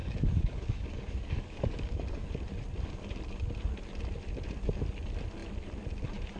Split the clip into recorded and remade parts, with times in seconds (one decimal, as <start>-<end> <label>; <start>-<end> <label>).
0.0-2.3 remade; 2.3-6.4 recorded

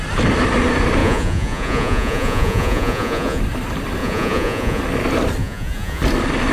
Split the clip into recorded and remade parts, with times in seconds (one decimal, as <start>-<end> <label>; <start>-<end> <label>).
0.0-1.0 recorded; 1.0-3.4 remade; 3.4-4.0 recorded; 4.0-4.8 remade; 4.8-5.4 recorded; 5.4-6.0 remade; 6.0-6.5 recorded

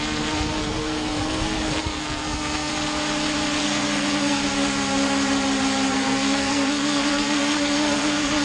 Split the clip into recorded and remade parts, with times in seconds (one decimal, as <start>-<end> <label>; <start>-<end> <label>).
0.0-2.7 remade; 2.7-3.6 recorded; 3.6-4.4 remade; 4.4-5.9 recorded; 5.9-8.4 remade

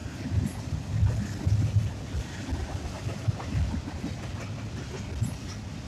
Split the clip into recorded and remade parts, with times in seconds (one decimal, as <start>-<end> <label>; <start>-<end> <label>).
0.0-5.9 recorded

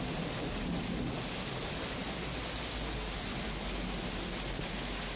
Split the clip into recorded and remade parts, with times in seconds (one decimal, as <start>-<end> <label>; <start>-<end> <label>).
0.0-5.2 recorded

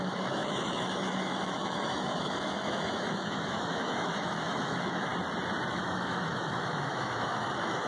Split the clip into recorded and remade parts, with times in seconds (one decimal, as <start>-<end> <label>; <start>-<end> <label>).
0.0-5.1 remade; 5.1-5.7 recorded; 5.7-7.9 remade

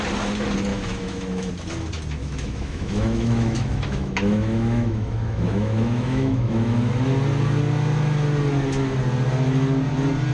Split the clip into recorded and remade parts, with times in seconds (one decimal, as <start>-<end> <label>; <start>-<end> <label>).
0.0-0.7 recorded; 0.7-1.5 remade; 1.5-2.2 recorded; 2.2-6.9 remade; 6.9-10.3 recorded

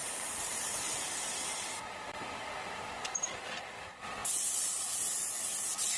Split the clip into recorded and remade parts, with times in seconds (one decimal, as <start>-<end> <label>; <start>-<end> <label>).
0.0-3.6 remade; 3.6-6.0 recorded